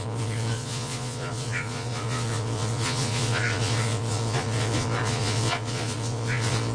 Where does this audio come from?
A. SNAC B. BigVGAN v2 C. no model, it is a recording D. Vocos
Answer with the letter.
D